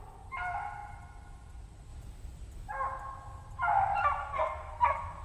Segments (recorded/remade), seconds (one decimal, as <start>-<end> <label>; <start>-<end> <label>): 0.0-4.2 recorded; 4.2-4.8 remade; 4.8-5.2 recorded